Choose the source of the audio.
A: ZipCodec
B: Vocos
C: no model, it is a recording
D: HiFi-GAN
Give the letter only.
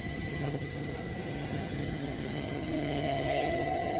D